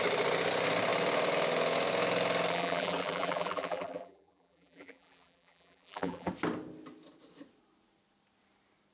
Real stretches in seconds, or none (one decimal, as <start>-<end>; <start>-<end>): 0.0-2.5; 6.3-8.9